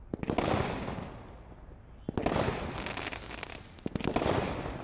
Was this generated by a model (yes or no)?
no